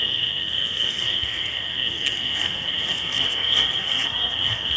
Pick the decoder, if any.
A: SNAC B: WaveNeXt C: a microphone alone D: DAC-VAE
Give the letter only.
A